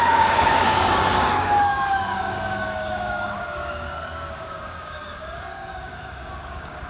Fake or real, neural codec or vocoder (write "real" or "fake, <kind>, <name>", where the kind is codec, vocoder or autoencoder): fake, codec, DAC